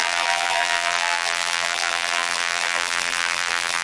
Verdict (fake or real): fake